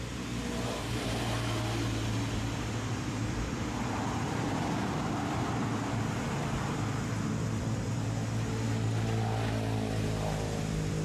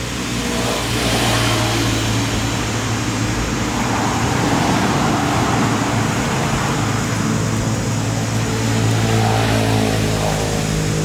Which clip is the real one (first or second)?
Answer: second